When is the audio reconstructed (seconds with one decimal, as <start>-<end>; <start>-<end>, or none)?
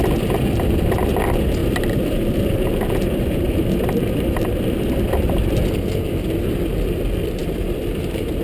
1.6-4.7; 7.4-8.4